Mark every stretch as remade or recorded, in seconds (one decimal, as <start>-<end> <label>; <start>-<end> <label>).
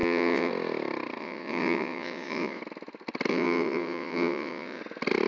0.0-0.5 remade; 0.5-1.2 recorded; 1.2-2.6 remade; 2.6-3.3 recorded; 3.3-4.8 remade; 4.8-5.3 recorded